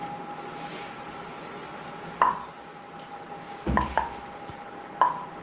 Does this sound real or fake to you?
real